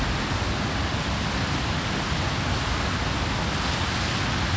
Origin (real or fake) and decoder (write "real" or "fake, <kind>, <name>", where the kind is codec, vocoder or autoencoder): real